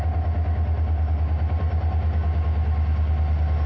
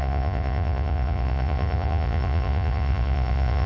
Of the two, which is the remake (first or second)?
second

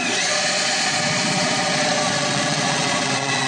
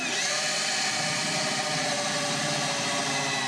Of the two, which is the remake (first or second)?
first